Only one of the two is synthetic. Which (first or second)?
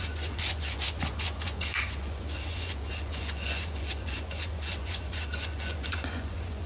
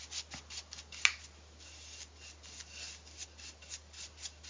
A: first